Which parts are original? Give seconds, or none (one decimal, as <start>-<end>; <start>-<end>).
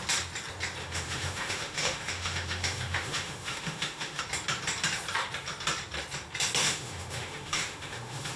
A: 0.0-0.8; 4.2-6.6